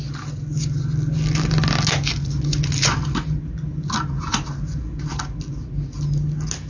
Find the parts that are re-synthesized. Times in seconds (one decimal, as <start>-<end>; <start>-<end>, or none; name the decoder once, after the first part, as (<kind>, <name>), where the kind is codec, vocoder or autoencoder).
none

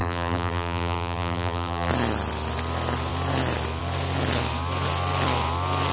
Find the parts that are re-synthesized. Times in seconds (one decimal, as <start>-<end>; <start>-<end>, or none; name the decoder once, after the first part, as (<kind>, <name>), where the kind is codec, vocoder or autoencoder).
0.0-1.9 (vocoder, BigVGAN v2)

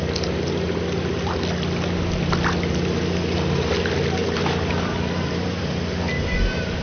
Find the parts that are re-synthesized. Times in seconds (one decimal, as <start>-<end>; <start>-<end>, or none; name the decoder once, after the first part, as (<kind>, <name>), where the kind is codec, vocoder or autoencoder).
4.2-5.6 (vocoder, BigVGAN v2)

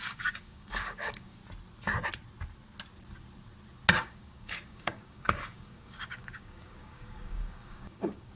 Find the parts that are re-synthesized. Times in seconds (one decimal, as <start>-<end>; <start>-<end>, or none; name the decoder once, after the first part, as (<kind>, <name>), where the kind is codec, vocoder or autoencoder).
0.0-1.4 (codec, DAC); 4.0-8.4

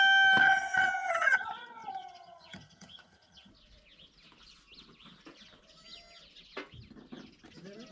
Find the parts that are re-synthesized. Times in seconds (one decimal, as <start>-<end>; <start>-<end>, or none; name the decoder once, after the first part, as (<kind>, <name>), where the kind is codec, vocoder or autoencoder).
0.4-3.5 (vocoder, HiFi-GAN)